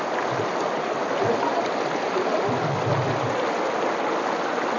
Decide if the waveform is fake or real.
real